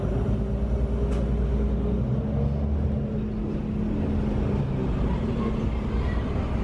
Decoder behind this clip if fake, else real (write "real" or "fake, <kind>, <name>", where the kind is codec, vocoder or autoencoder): real